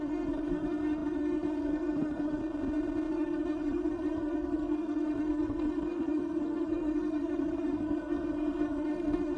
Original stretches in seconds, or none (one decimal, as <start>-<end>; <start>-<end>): 2.4-3.1